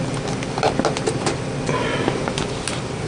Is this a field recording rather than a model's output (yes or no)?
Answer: yes